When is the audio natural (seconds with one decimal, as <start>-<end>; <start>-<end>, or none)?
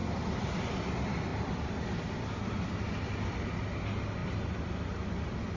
0.9-1.3; 2.9-4.2